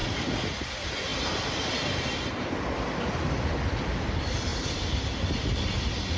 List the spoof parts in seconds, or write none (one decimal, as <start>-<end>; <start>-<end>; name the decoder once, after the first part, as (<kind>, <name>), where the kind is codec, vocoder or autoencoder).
4.5-6.2 (vocoder, BigVGAN v2)